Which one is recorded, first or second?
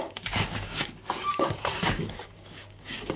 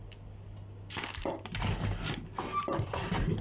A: second